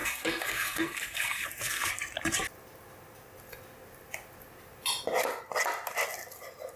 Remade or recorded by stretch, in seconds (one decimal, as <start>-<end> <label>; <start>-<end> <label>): 0.0-1.9 remade; 1.9-6.8 recorded